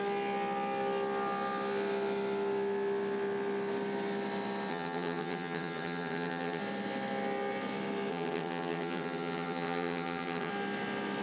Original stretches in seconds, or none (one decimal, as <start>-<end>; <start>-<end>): 0.0-4.7; 6.6-8.1; 10.5-11.2